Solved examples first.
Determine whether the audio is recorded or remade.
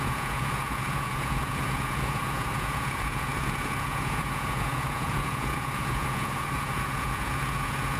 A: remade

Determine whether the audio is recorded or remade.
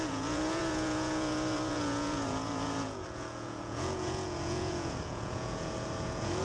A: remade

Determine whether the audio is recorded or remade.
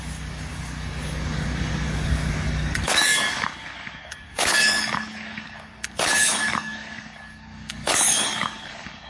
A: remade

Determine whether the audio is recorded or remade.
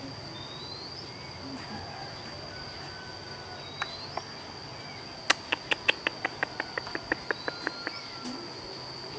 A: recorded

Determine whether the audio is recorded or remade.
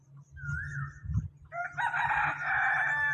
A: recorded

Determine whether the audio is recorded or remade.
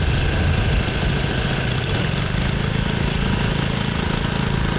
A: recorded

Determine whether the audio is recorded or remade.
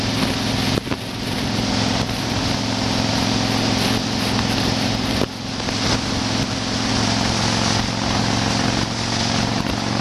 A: recorded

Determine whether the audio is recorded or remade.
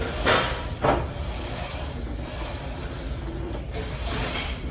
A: recorded